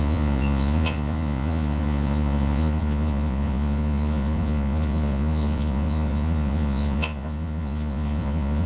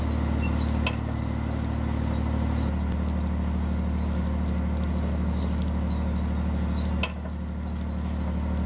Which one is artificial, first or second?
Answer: first